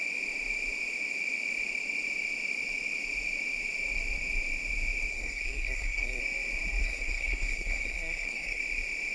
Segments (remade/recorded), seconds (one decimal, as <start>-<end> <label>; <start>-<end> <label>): 0.0-5.1 recorded; 5.1-6.2 remade; 6.2-6.8 recorded; 6.8-8.6 remade; 8.6-9.1 recorded

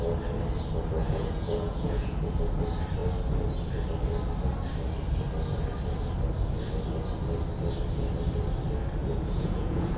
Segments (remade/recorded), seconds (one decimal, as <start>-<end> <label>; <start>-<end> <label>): 0.0-1.0 recorded; 1.0-2.6 remade; 2.6-9.0 recorded; 9.0-10.0 remade